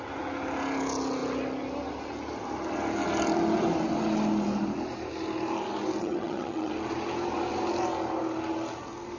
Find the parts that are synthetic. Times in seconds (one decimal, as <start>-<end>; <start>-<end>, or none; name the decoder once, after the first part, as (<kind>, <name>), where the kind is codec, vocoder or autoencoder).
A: 6.0-6.7 (vocoder, HiFi-GAN)